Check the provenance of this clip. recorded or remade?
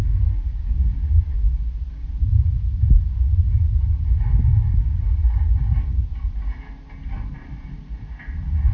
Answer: recorded